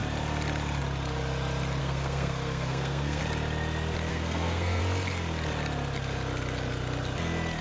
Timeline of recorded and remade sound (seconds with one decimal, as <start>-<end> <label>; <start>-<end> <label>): 0.0-1.8 recorded; 1.8-3.2 remade; 3.2-4.1 recorded; 4.1-4.8 remade; 4.8-7.6 recorded